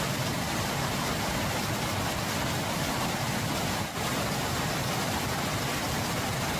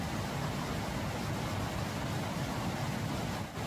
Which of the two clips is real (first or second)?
second